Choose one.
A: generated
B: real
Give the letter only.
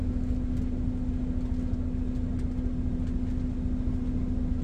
B